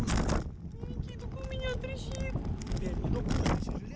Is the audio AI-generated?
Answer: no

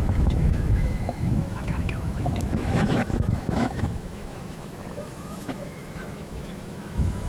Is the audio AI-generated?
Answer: yes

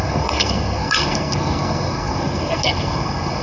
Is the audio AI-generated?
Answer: yes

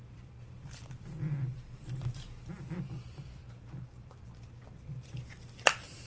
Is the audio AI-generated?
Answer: yes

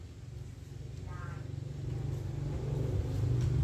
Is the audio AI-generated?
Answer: no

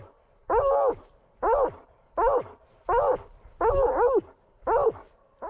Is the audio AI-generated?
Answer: no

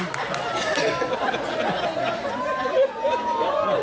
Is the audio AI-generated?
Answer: no